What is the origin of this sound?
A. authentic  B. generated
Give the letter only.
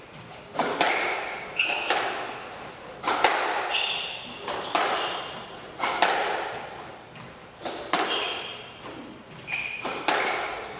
A